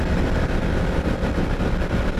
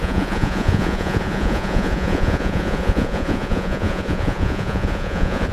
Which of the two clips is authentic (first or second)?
first